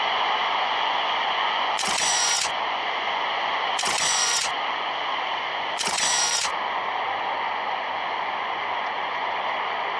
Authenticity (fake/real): fake